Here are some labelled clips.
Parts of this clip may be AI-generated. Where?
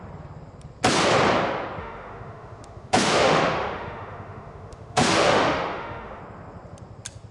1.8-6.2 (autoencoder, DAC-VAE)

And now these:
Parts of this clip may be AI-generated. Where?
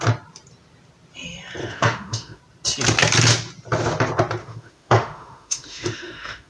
1.6-2.4 (autoencoder, DAC-VAE); 4.4-6.5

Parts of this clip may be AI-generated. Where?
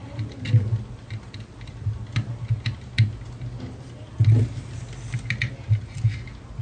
none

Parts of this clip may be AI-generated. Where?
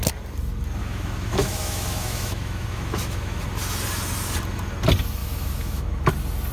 0.8-3.4 (autoencoder, DAC-VAE); 5.2-6.1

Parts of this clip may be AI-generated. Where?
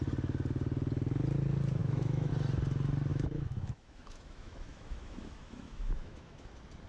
1.8-2.3 (autoencoder, DAC-VAE); 3.1-6.5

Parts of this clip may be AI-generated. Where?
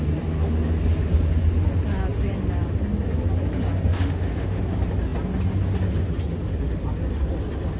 3.9-4.6 (autoencoder, DAC-VAE)